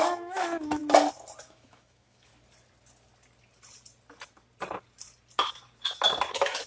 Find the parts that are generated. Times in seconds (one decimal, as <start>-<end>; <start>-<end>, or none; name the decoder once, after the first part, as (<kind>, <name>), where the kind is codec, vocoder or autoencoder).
0.0-0.8 (autoencoder, DAC-VAE); 1.4-2.3; 6.3-6.7